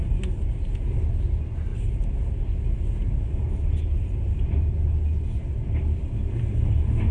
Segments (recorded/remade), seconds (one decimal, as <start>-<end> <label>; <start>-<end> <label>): 0.0-1.1 remade; 1.1-7.1 recorded